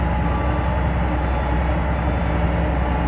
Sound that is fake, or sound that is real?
real